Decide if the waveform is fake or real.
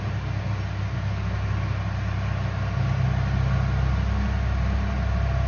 real